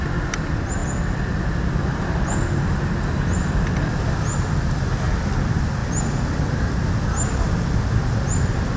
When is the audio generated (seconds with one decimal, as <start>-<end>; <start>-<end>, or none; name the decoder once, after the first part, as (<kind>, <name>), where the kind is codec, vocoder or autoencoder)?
none